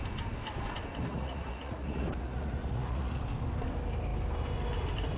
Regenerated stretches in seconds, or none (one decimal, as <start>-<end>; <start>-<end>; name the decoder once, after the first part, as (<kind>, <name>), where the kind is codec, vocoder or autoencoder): 1.1-3.2 (vocoder, Vocos)